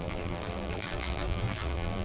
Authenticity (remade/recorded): remade